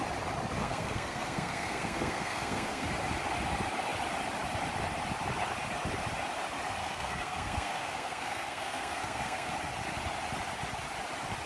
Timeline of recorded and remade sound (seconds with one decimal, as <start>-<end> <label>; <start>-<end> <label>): 0.0-0.6 recorded; 0.6-2.9 remade; 2.9-6.8 recorded; 6.8-9.5 remade; 9.5-11.5 recorded